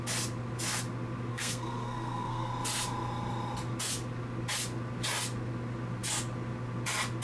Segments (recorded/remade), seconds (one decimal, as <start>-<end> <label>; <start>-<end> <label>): 0.0-1.3 recorded; 1.3-2.5 remade; 2.5-7.2 recorded